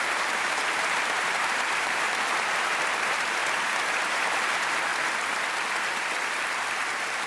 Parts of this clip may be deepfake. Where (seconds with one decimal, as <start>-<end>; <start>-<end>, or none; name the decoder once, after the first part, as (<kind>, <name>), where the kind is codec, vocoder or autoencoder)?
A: 0.0-3.4 (vocoder, BigVGAN v2); 4.1-4.9; 6.3-7.3